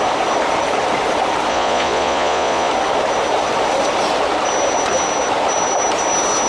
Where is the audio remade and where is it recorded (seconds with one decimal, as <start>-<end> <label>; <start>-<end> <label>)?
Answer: 0.0-1.5 recorded; 1.5-2.7 remade; 2.7-6.5 recorded